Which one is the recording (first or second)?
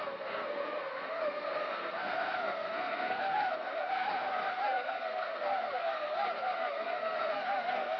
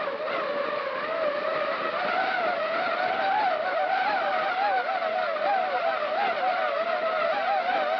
second